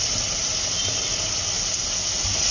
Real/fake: real